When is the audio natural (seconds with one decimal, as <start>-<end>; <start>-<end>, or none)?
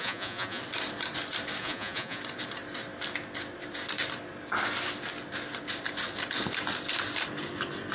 0.6-1.6; 2.2-7.9